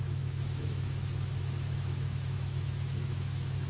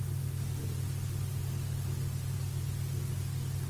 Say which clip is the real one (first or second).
second